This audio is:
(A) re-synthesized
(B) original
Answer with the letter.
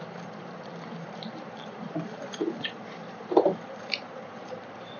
A